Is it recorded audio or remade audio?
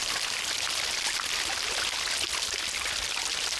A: recorded